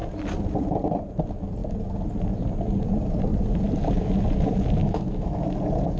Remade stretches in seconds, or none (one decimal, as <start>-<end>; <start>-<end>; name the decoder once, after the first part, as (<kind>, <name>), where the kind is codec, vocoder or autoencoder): 4.8-5.4 (autoencoder, DAC-VAE)